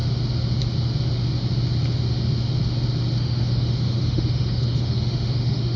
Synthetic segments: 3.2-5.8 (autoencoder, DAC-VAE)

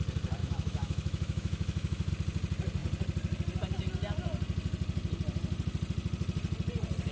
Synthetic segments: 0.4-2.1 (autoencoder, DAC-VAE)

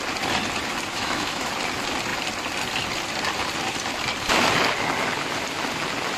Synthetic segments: 0.9-1.5 (autoencoder, DAC-VAE)

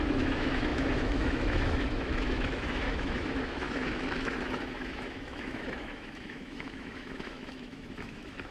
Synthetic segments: 0.0-8.5 (autoencoder, DAC-VAE)

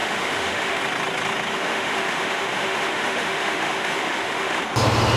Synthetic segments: 0.0-0.8 (autoencoder, DAC-VAE); 1.5-4.6

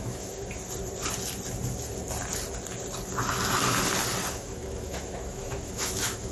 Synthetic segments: 0.0-0.6 (autoencoder, DAC-VAE); 4.3-6.3